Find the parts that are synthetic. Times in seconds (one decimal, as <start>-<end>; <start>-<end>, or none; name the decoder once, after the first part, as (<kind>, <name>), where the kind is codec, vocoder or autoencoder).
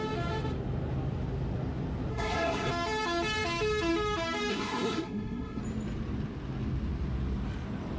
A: 2.1-2.7 (codec, SNAC); 4.5-5.6